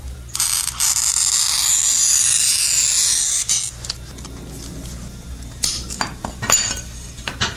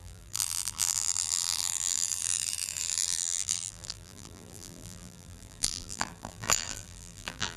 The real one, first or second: first